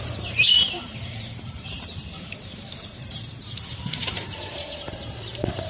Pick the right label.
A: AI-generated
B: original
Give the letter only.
A